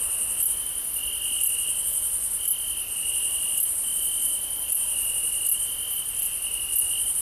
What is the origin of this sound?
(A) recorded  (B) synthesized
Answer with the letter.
A